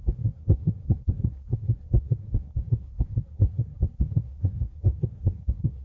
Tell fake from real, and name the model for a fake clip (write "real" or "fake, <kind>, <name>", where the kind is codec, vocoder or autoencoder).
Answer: fake, codec, SNAC